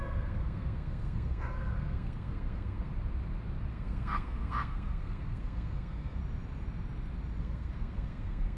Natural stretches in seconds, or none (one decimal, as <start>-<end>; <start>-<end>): 2.9-3.7; 6.2-7.4